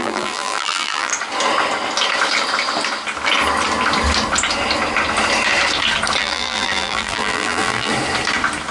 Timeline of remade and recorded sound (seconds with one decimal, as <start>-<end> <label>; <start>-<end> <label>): 0.0-1.1 remade; 1.1-6.2 recorded; 6.2-7.9 remade; 7.9-8.7 recorded